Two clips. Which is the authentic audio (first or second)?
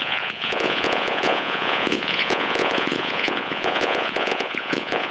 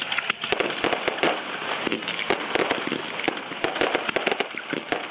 second